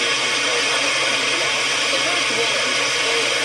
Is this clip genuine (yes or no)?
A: yes